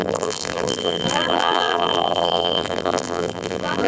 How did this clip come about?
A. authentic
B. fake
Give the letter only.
B